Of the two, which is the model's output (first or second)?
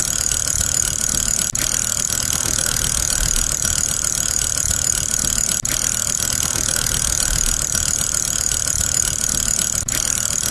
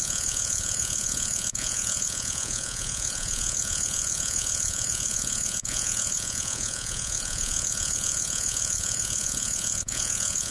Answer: second